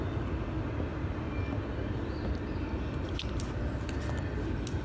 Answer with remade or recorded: recorded